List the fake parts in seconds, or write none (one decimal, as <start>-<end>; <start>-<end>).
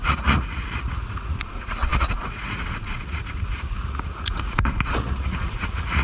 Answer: 0.0-6.0